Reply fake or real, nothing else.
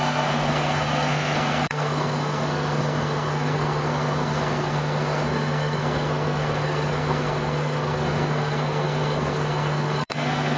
fake